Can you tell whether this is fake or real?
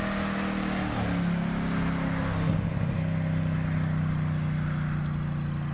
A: real